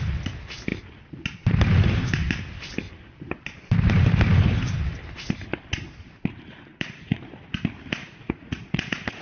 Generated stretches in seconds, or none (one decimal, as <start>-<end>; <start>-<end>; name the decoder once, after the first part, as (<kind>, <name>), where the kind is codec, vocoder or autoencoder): 6.7-7.2 (vocoder, Vocos); 8.0-9.2

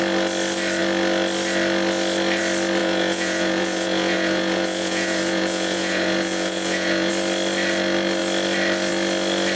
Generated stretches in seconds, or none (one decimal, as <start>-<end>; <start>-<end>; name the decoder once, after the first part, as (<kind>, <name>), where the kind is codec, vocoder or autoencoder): 2.8-7.1 (vocoder, Vocos)

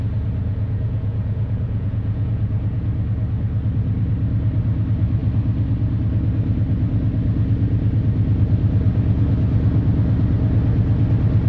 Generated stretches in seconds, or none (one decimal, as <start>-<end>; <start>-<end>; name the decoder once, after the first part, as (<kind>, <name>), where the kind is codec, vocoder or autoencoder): 0.4-2.8 (vocoder, Vocos)